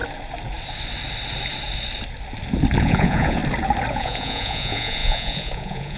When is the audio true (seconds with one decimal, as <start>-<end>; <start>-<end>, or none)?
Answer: 0.0-2.8; 3.4-3.9